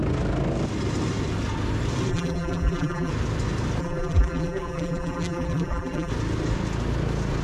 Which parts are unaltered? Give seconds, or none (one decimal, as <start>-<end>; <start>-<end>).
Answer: 0.0-2.1; 3.1-3.8; 6.1-7.4